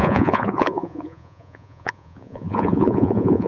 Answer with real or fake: fake